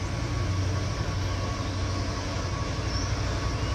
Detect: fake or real real